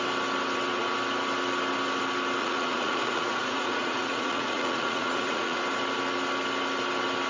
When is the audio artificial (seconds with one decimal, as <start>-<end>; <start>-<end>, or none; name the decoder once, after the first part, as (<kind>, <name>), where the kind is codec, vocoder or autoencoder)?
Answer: 2.4-5.6 (vocoder, Vocos)